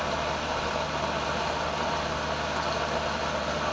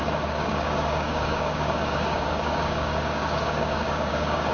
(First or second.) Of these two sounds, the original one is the first